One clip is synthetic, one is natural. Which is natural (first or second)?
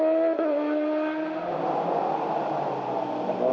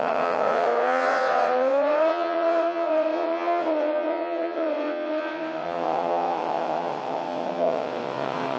first